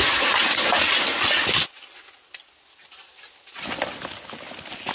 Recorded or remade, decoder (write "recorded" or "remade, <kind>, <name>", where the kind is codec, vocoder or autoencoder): recorded